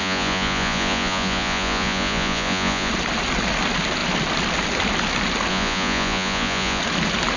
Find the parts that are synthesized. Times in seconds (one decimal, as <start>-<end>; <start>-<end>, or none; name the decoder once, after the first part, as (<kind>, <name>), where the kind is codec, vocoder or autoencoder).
0.0-2.9 (vocoder, Vocos); 5.5-6.8